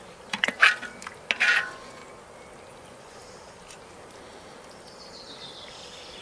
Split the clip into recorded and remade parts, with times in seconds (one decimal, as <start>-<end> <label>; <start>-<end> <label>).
0.0-0.6 remade; 0.6-1.5 recorded; 1.5-2.0 remade; 2.0-2.7 recorded; 2.7-3.2 remade; 3.2-6.2 recorded